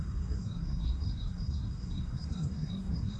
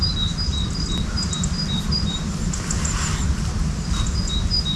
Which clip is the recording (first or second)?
second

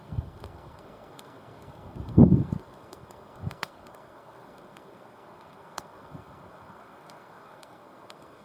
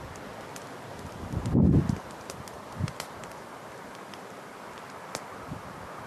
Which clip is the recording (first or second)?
second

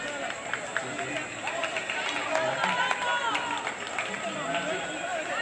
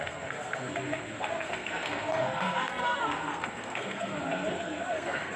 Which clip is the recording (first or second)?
first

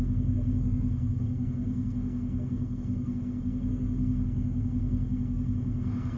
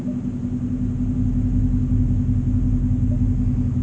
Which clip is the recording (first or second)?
second